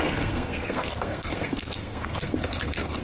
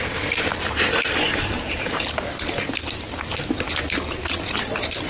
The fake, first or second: first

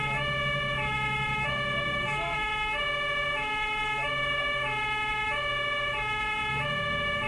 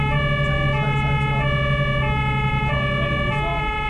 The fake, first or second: first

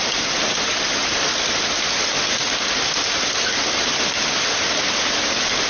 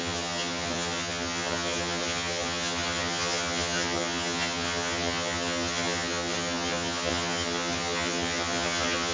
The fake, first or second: second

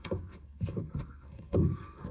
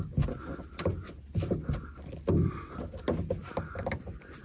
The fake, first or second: first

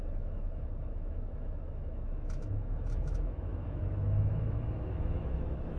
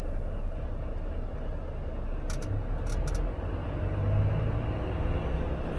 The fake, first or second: first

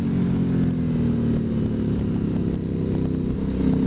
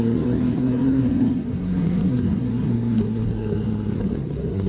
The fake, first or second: second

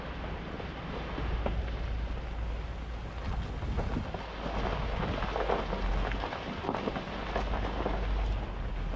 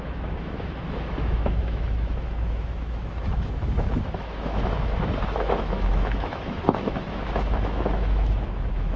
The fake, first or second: second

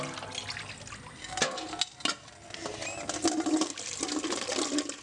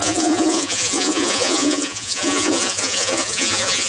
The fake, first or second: second